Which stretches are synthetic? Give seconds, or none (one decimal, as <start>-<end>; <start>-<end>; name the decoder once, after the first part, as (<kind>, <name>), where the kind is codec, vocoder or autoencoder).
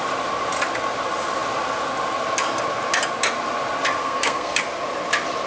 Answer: 4.0-4.6 (codec, SNAC)